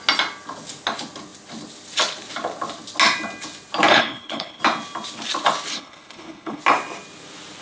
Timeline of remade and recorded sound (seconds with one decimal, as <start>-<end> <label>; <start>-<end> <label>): 0.0-3.9 recorded; 3.9-4.6 remade; 4.6-5.7 recorded; 5.7-6.6 remade; 6.6-7.6 recorded